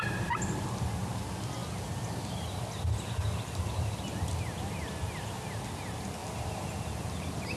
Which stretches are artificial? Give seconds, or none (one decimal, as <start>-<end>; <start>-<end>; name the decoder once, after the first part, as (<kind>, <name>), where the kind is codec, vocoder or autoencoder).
none